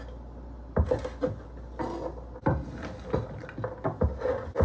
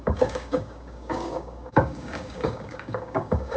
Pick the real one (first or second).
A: first